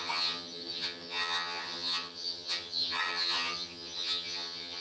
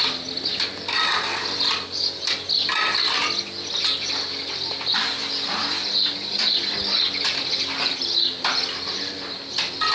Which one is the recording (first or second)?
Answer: second